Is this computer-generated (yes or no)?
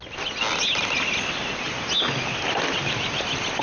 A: no